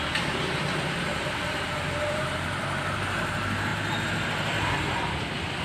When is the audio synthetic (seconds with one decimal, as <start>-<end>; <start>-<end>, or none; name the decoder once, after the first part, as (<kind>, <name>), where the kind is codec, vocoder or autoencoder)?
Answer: 0.0-3.7 (vocoder, BigVGAN v2)